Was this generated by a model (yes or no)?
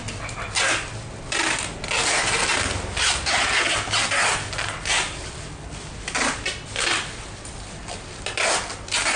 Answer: no